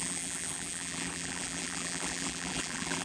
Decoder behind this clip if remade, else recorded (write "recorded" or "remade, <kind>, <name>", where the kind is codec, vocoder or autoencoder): remade, vocoder, BigVGAN v2